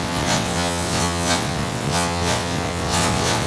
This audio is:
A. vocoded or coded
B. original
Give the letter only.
A